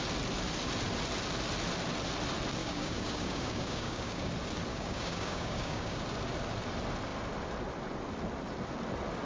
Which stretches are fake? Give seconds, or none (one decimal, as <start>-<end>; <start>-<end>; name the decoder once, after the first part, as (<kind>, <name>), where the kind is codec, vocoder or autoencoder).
2.6-4.3 (codec, DAC); 4.7-6.0